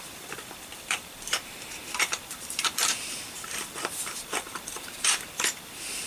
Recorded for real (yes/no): no